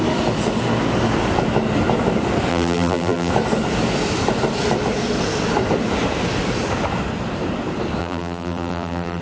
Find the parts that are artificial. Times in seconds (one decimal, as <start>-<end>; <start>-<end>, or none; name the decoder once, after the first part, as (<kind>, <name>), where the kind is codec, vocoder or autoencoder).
2.5-3.3 (vocoder, BigVGAN v2); 8.0-9.2